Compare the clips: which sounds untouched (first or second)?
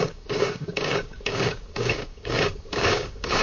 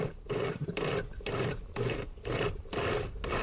second